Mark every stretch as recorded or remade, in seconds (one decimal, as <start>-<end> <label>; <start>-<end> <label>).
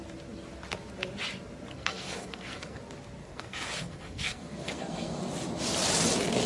0.0-1.7 recorded; 1.7-2.8 remade; 2.8-3.2 recorded; 3.2-5.2 remade; 5.2-6.5 recorded